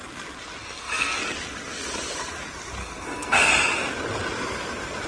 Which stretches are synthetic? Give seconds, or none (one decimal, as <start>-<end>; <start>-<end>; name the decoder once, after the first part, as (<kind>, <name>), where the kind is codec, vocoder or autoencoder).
0.6-1.2 (codec, SNAC); 2.8-3.5